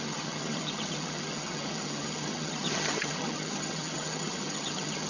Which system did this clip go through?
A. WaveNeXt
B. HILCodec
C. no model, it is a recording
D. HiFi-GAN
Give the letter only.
D